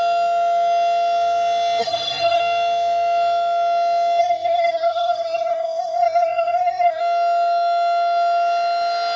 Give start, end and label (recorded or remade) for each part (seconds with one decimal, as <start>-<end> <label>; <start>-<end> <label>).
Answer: 0.0-1.8 recorded; 1.8-2.4 remade; 2.4-4.2 recorded; 4.2-7.0 remade; 7.0-9.2 recorded